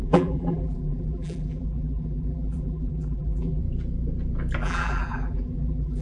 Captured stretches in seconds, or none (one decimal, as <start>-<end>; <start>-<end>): 3.6-4.6